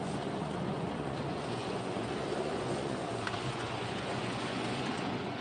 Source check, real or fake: fake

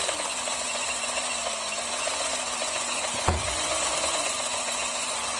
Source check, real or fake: fake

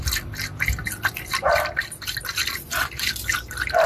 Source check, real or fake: real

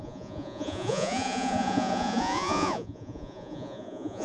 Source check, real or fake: fake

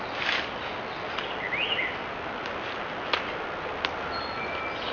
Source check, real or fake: real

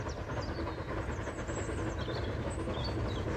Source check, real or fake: real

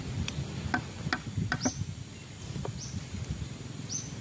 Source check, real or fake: real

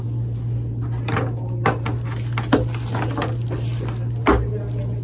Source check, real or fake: real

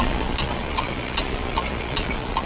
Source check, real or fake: fake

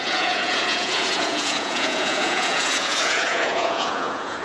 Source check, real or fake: fake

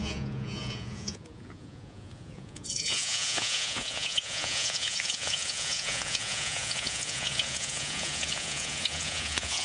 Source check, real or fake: fake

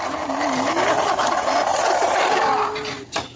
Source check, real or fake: real